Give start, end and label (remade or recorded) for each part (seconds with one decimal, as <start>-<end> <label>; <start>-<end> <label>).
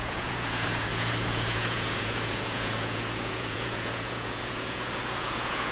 0.0-5.7 remade